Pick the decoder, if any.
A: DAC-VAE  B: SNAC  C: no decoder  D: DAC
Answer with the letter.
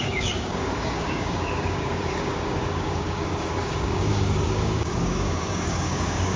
D